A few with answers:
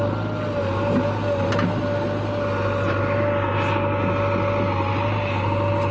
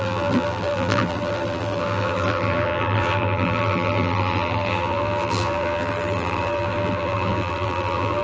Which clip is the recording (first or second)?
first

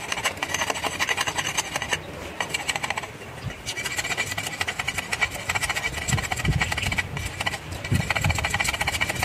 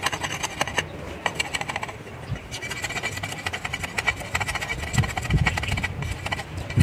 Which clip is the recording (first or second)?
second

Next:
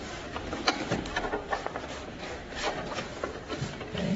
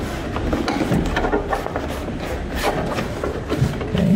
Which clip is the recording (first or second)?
second